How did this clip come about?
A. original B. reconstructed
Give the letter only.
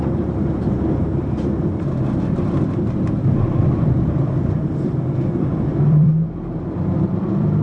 B